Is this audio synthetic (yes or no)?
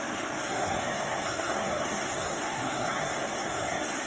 yes